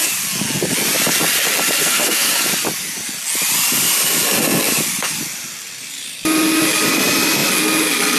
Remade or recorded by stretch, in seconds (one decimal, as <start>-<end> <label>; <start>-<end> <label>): 0.0-1.8 recorded; 1.8-2.3 remade; 2.3-8.2 recorded